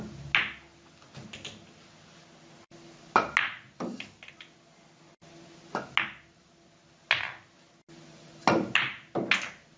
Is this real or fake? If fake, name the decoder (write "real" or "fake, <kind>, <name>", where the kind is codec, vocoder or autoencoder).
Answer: real